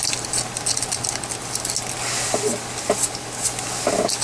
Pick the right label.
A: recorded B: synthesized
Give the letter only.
A